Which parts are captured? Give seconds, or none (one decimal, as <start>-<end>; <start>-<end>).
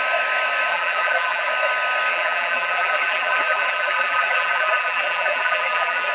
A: 0.0-0.7; 1.5-2.1